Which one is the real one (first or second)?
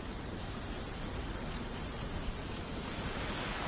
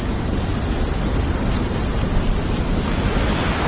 second